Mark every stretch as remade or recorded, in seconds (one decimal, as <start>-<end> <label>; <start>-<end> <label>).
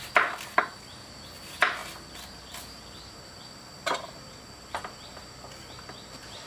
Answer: 0.0-6.5 recorded